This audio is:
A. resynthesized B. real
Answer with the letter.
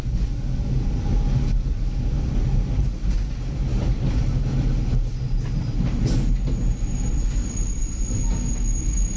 B